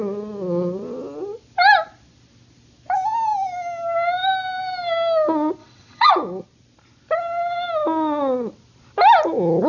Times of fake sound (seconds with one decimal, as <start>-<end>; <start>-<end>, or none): 5.6-6.1